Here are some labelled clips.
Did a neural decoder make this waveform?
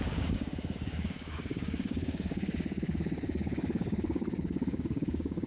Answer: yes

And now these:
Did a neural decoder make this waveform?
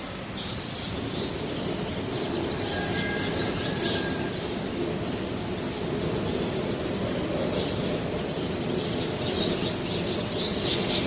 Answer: no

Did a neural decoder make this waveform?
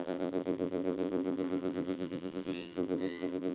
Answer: yes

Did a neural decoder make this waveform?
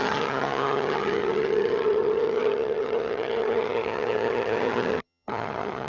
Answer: yes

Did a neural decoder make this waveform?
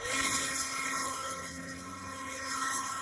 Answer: yes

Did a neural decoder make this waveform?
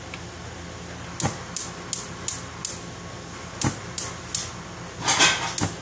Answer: no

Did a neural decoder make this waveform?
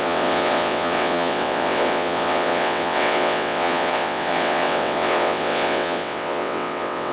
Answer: yes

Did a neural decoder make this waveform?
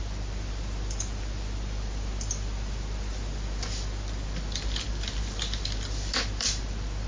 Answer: no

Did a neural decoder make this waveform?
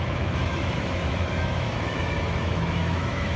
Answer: yes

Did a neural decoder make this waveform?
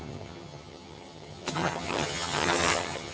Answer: yes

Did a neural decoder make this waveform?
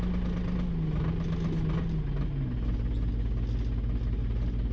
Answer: no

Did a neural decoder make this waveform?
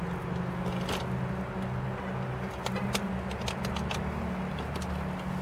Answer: no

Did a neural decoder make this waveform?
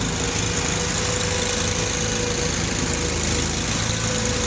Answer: no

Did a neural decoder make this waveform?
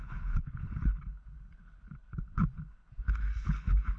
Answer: yes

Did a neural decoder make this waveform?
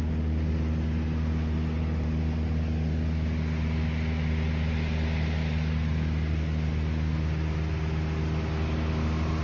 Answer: no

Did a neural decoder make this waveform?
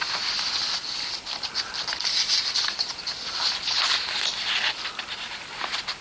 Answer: no